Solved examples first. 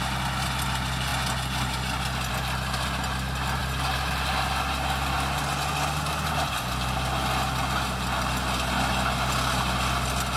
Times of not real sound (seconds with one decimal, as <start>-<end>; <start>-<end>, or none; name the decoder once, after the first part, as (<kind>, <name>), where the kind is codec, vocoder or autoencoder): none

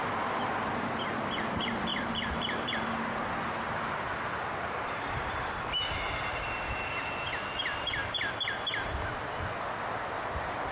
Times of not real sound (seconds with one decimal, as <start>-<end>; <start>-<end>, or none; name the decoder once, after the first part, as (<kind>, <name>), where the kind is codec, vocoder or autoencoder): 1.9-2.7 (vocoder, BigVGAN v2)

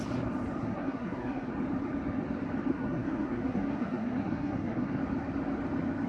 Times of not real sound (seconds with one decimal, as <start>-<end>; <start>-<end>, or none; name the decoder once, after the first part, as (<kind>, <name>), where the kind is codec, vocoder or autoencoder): 0.6-1.5 (codec, SNAC); 2.7-5.0